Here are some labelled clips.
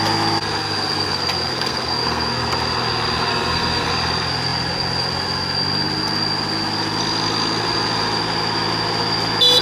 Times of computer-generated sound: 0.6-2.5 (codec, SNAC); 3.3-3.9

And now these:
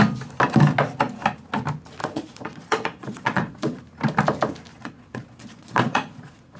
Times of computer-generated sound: 2.0-3.8 (vocoder, Vocos); 4.7-6.6

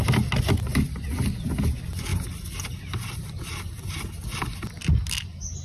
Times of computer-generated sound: 0.7-1.3 (vocoder, BigVGAN v2)

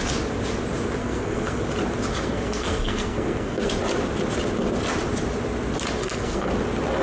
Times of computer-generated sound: 1.0-1.6 (codec, SNAC); 2.1-3.7; 6.0-6.5

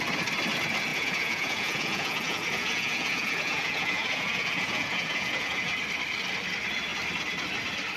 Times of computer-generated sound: 0.9-5.7 (vocoder, Vocos)

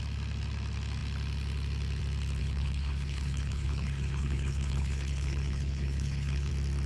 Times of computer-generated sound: 2.4-6.5 (codec, HILCodec)

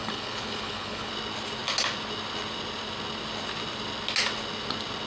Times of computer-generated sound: 0.0-1.1 (codec, HILCodec)

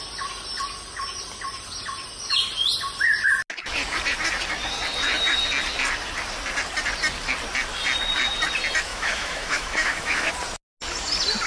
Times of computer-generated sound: 8.9-10.3 (autoencoder, DAC-VAE)